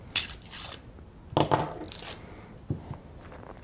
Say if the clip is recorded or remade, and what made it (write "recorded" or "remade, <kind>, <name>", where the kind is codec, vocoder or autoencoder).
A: recorded